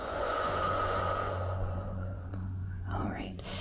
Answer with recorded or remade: remade